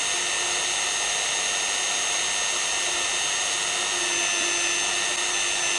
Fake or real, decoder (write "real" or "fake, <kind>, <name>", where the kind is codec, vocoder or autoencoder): real